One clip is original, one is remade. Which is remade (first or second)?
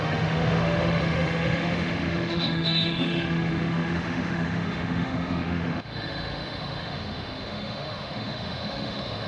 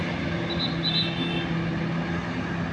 first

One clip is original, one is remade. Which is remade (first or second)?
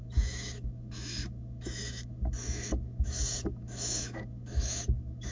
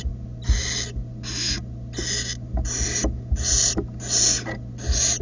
first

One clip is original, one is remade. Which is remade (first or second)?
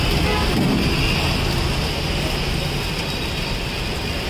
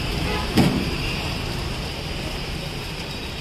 second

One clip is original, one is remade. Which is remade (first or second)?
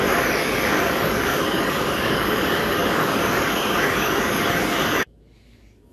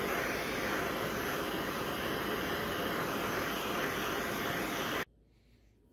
first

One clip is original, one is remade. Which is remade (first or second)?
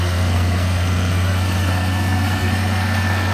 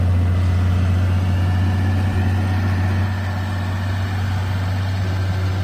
first